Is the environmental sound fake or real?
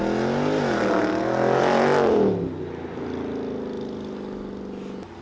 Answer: real